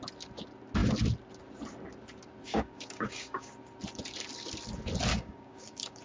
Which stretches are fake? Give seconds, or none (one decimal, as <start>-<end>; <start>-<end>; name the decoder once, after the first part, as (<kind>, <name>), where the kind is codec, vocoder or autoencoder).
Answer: 2.4-3.5 (codec, DAC); 5.1-6.0